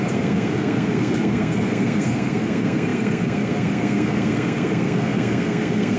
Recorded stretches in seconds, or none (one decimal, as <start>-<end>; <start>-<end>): none

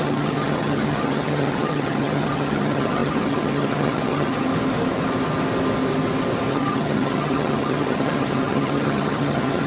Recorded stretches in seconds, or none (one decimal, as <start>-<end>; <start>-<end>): 4.5-6.5

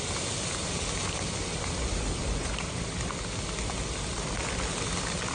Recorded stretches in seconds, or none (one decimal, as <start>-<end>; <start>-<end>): 0.0-2.2; 2.8-5.3

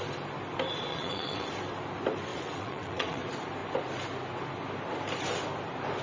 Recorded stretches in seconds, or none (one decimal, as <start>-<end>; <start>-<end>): 0.0-0.9; 1.5-2.3; 3.2-6.0

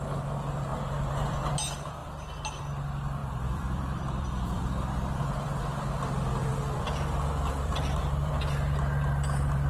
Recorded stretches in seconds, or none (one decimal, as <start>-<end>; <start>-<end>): 0.0-0.7; 1.5-3.2; 5.6-6.3; 8.3-9.7